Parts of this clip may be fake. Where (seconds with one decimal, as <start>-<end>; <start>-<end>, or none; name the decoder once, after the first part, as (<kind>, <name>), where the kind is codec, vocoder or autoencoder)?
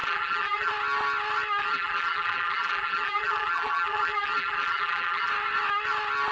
0.0-0.7 (vocoder, BigVGAN v2); 1.6-5.3